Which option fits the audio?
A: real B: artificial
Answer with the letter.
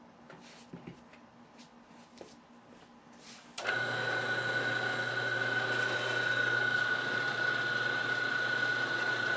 A